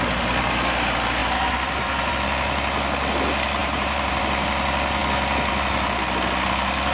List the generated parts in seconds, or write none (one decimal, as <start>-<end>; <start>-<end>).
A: 1.2-2.1; 3.6-4.2